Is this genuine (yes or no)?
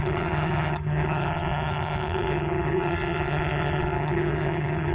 no